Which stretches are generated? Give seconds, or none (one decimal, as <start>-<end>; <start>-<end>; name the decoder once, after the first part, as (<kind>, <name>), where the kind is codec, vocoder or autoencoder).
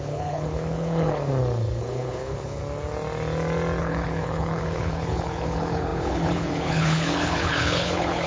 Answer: 0.0-1.3 (codec, HILCodec); 1.8-2.6; 3.8-8.3